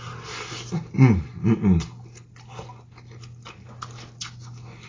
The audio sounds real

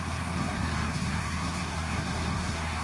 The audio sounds fake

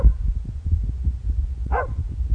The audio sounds fake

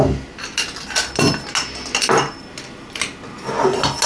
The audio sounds real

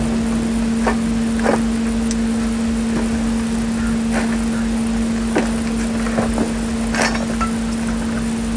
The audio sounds real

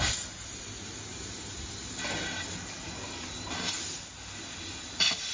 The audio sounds real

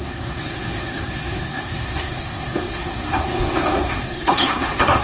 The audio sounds fake